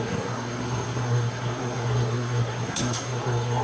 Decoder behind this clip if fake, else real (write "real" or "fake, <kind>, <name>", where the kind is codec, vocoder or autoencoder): fake, codec, SNAC